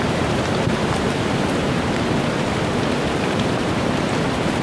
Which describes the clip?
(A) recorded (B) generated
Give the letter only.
B